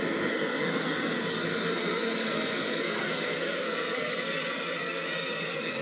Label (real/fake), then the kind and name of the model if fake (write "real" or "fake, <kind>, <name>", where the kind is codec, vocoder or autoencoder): fake, codec, SNAC